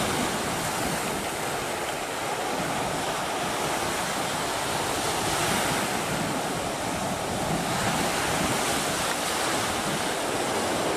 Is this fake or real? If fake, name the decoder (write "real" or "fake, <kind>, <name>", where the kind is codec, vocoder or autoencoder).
real